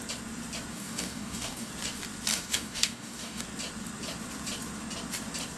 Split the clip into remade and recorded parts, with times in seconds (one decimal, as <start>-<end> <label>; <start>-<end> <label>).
0.0-0.7 recorded; 0.7-1.7 remade; 1.7-2.3 recorded; 2.3-3.4 remade; 3.4-5.6 recorded